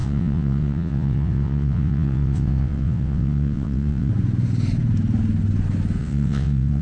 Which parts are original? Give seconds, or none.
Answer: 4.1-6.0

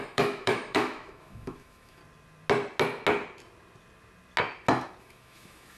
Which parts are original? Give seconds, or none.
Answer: 2.0-5.0

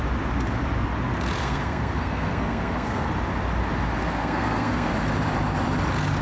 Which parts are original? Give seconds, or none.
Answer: 0.0-1.4; 3.1-4.0; 4.9-6.2